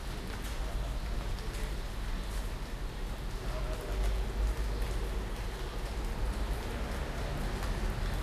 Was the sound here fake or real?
real